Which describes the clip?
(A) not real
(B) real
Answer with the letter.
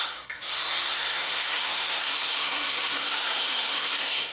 A